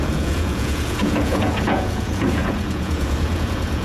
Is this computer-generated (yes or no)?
yes